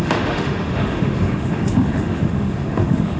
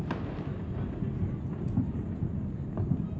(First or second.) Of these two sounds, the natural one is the second